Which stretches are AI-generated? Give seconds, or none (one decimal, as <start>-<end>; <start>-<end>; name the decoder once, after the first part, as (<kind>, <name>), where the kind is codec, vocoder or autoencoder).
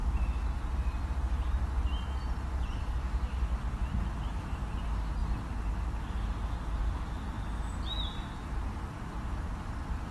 none